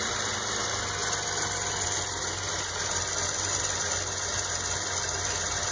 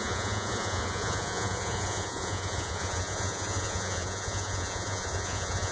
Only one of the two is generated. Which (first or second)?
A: second